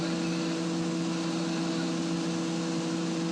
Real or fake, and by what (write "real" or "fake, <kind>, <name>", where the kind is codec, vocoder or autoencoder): real